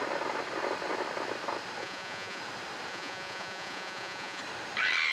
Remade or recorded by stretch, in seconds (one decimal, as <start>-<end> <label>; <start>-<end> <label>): 0.0-1.8 recorded; 1.8-2.4 remade; 2.4-2.9 recorded; 2.9-4.4 remade; 4.4-5.1 recorded